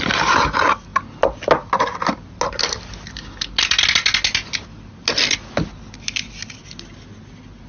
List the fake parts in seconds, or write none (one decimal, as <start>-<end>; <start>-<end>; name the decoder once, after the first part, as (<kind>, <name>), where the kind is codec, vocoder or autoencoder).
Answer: none